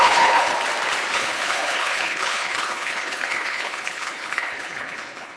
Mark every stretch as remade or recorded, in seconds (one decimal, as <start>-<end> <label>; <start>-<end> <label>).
0.0-0.5 remade; 0.5-1.1 recorded; 1.1-5.4 remade